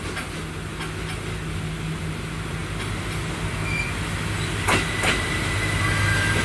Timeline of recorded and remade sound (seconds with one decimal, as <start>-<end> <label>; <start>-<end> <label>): 0.0-6.4 recorded